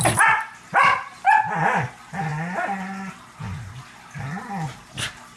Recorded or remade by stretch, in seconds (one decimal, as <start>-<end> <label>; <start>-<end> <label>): 0.0-5.4 recorded